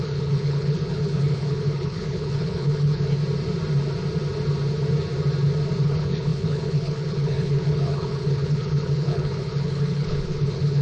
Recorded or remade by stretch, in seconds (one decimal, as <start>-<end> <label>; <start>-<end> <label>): 0.0-3.2 remade; 3.2-5.8 recorded; 5.8-10.8 remade